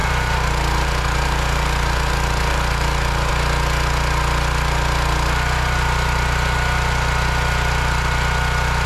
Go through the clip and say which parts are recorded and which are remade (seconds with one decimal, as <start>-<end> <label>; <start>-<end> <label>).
0.0-3.3 remade; 3.3-8.9 recorded